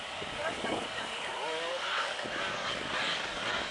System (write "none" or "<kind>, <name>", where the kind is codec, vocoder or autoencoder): codec, DAC